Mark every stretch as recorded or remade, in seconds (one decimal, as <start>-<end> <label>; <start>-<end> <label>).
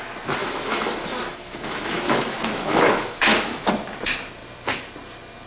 0.0-0.4 recorded; 0.4-3.7 remade; 3.7-5.5 recorded